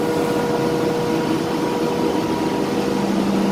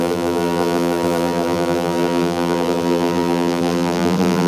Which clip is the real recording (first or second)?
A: first